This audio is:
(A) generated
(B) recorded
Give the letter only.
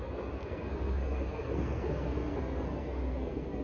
A